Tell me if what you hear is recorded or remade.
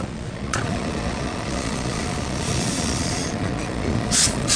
remade